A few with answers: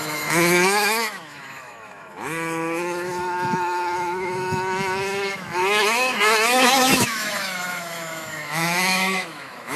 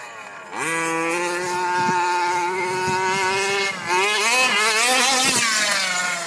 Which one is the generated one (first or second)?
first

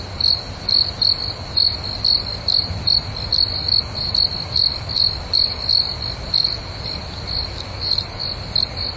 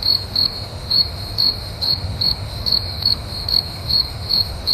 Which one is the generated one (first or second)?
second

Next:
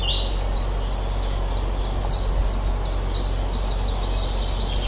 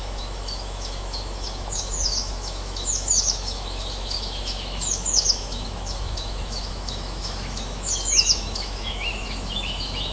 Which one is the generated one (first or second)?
second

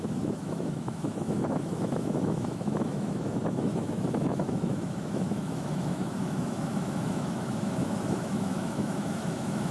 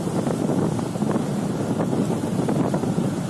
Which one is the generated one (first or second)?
first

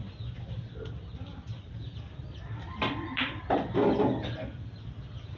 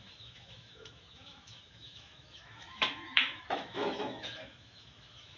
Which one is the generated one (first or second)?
second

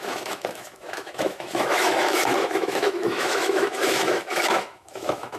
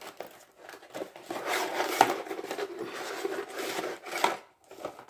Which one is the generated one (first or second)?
first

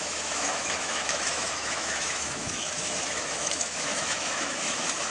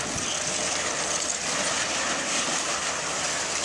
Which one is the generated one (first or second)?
first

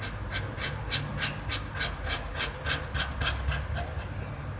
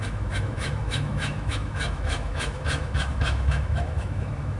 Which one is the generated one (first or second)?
second